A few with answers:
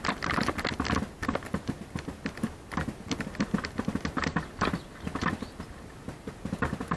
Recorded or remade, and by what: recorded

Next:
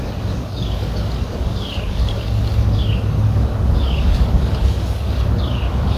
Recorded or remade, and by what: remade, codec, DAC